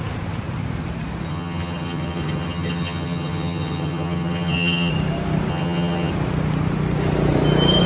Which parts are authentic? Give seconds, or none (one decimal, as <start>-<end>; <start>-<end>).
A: 0.0-1.3; 4.9-5.5; 6.1-7.9